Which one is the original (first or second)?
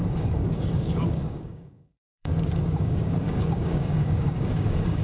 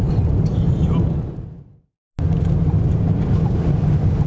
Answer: second